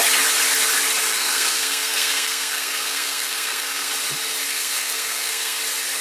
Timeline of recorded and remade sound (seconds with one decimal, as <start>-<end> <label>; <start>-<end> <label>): 0.0-1.1 recorded; 1.1-3.9 remade; 3.9-4.5 recorded; 4.5-5.6 remade; 5.6-6.0 recorded

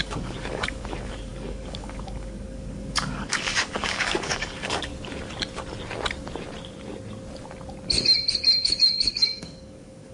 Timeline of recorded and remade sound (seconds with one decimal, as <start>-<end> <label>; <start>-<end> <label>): 0.0-4.9 remade; 4.9-9.1 recorded; 9.1-10.1 remade

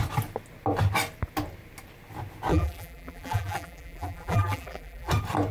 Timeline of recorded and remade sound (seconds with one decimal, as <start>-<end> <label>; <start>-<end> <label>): 0.0-2.5 recorded; 2.5-5.1 remade; 5.1-5.5 recorded

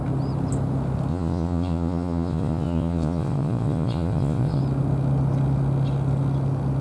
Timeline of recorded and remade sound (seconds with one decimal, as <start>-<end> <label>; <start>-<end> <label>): 0.0-1.1 recorded; 1.1-4.6 remade; 4.6-6.8 recorded